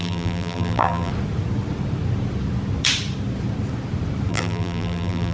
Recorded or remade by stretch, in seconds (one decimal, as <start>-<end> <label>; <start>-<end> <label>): 0.0-1.1 remade; 1.1-4.3 recorded; 4.3-5.3 remade